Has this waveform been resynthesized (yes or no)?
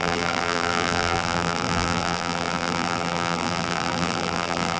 yes